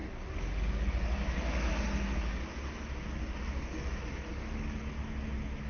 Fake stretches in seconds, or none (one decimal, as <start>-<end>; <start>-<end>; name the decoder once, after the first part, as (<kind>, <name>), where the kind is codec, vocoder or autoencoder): 0.0-1.7 (codec, DAC); 3.2-3.9; 4.3-4.9